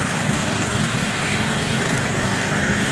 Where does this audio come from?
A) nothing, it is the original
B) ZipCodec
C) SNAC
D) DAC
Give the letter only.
D